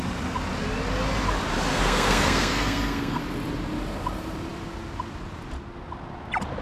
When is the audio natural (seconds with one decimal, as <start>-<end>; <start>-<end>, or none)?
0.0-1.7; 3.2-6.6